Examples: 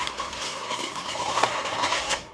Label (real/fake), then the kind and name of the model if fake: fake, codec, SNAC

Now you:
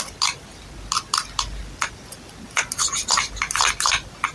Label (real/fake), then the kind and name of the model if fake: real